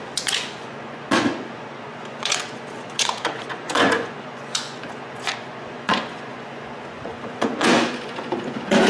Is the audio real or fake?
fake